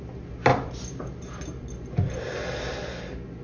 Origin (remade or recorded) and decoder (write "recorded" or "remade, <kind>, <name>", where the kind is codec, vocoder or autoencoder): recorded